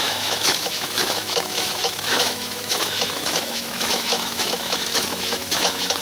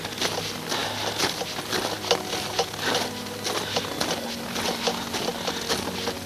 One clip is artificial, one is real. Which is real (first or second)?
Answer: second